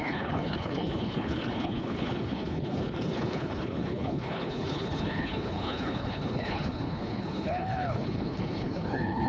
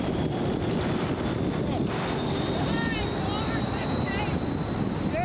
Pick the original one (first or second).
second